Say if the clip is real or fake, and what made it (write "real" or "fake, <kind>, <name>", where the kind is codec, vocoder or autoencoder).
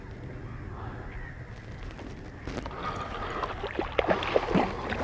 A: real